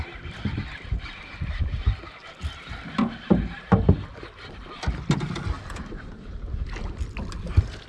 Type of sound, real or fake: real